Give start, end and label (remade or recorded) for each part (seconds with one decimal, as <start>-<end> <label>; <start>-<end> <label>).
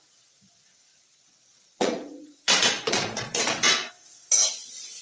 0.0-0.9 recorded; 0.9-3.9 remade; 3.9-5.0 recorded